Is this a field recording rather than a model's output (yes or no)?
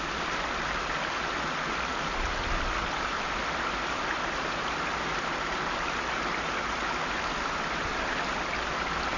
yes